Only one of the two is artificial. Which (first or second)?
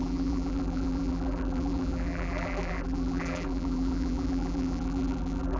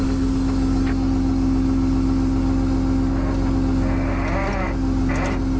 first